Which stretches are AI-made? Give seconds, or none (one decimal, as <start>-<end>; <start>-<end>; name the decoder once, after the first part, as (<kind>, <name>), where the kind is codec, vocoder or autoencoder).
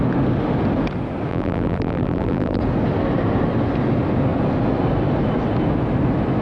1.3-2.6 (vocoder, BigVGAN v2)